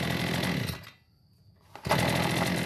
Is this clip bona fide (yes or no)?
yes